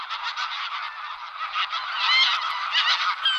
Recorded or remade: recorded